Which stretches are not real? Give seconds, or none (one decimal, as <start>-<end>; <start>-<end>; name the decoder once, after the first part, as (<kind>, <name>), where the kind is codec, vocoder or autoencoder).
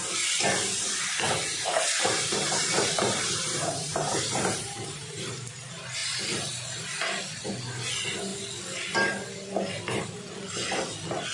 1.5-5.5 (vocoder, BigVGAN v2)